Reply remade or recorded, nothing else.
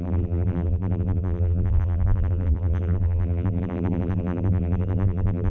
remade